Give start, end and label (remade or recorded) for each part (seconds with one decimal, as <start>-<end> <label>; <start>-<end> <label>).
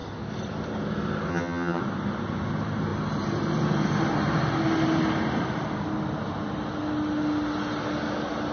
0.0-1.3 recorded; 1.3-1.8 remade; 1.8-8.5 recorded